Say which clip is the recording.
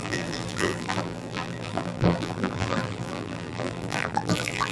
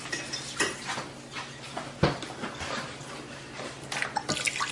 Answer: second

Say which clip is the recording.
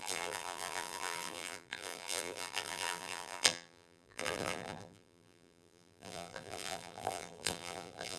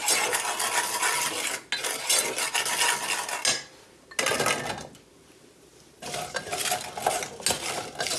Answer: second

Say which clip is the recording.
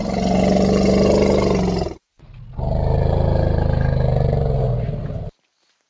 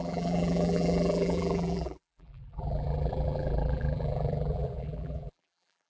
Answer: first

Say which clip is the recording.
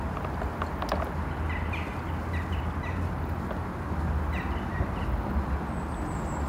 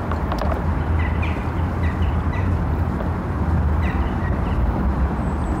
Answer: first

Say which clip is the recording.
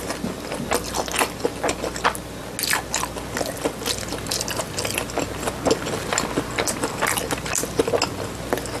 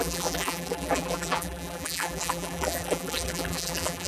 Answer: first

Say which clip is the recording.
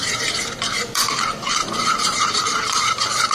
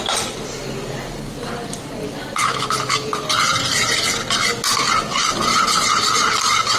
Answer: second